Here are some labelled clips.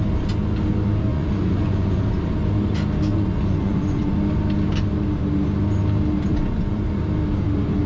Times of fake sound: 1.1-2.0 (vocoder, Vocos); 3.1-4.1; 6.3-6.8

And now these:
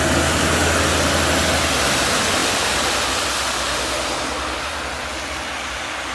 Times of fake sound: none

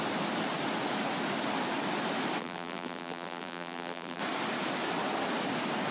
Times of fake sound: 2.4-4.2 (vocoder, BigVGAN v2)

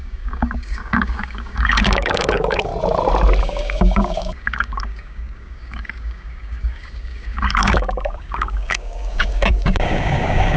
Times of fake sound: 0.0-2.7 (codec, DAC); 3.4-10.6

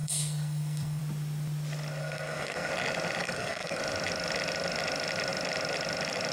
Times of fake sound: 0.0-1.0 (codec, SNAC); 2.0-2.7; 3.2-3.8

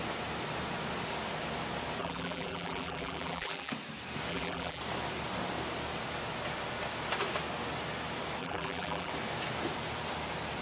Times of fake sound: 2.0-3.7 (vocoder, BigVGAN v2); 4.3-4.8; 8.4-9.1

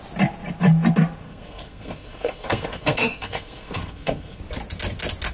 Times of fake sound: 1.2-4.4 (codec, SNAC)